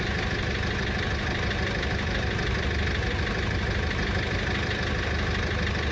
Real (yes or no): yes